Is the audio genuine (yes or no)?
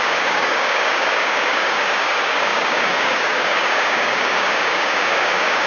no